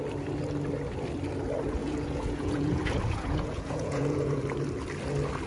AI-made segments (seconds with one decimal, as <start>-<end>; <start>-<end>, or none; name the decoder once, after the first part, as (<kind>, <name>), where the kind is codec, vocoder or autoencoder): 1.8-4.4 (vocoder, Vocos)